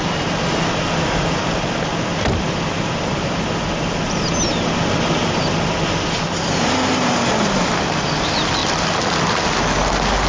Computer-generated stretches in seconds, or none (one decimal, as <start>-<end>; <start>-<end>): none